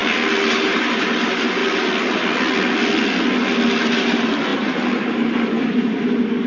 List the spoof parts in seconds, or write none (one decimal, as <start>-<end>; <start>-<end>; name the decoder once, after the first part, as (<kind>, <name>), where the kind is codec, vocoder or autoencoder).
0.5-1.6 (vocoder, BigVGAN v2); 3.8-6.5